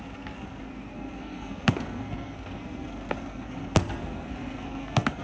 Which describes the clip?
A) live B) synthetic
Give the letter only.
B